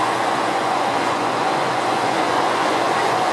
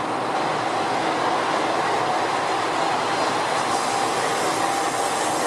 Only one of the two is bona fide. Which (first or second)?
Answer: second